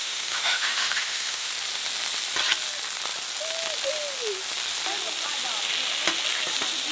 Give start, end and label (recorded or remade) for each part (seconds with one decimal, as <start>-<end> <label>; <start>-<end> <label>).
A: 0.0-1.5 remade; 1.5-6.9 recorded